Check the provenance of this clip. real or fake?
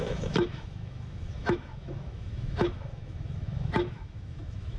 fake